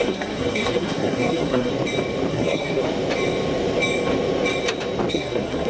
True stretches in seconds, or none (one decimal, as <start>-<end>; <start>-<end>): 1.7-2.3; 2.8-5.1